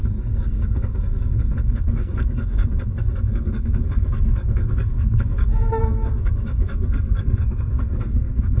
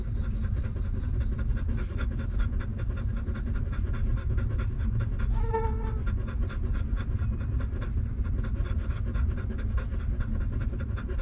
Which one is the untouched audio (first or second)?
second